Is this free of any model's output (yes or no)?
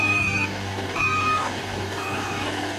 no